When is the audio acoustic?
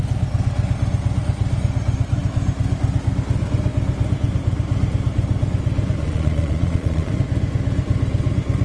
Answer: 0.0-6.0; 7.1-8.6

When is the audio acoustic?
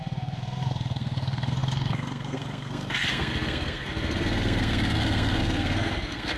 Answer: none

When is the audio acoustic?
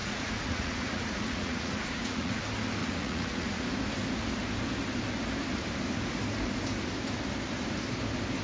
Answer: 2.4-2.8; 3.6-8.4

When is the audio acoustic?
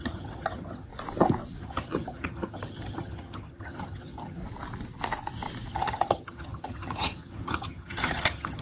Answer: 0.9-1.6; 4.4-5.7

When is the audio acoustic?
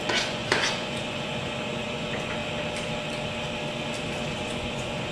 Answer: 2.4-4.3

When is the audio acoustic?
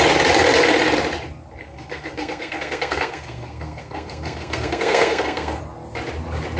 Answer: 0.0-1.6; 5.6-6.6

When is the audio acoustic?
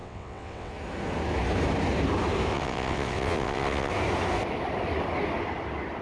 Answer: 0.7-2.5; 3.9-6.0